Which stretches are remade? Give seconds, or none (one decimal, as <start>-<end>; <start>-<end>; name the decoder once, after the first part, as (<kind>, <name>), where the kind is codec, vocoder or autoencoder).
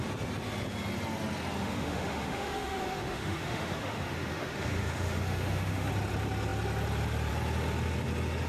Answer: 1.6-5.9 (autoencoder, DAC-VAE)